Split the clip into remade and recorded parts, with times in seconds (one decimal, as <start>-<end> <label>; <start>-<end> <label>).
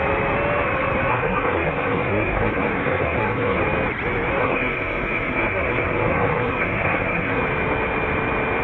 0.0-1.1 recorded; 1.1-3.6 remade; 3.6-4.4 recorded; 4.4-7.4 remade; 7.4-8.6 recorded